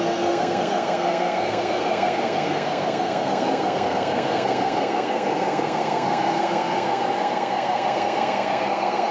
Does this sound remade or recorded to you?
remade